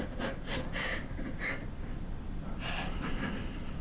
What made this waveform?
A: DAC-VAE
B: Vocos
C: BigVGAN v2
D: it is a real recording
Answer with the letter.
D